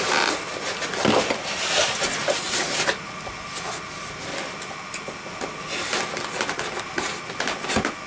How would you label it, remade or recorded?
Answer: recorded